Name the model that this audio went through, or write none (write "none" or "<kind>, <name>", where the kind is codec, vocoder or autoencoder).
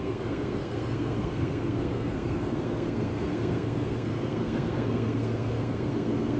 codec, SNAC